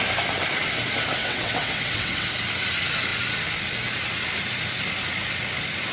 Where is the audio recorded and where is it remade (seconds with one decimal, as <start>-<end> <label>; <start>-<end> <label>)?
0.0-1.2 recorded; 1.2-2.3 remade; 2.3-5.9 recorded